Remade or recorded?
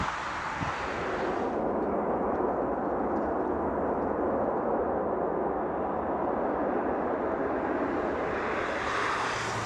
recorded